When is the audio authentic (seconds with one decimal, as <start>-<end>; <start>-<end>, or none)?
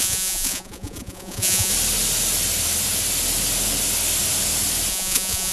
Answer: 1.7-4.9